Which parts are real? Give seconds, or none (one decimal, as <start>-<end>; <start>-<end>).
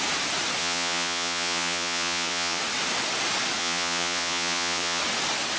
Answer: 0.0-0.6; 2.6-3.6; 5.0-5.6